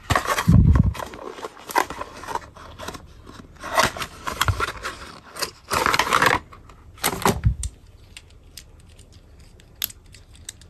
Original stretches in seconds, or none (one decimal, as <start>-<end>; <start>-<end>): 0.0-10.7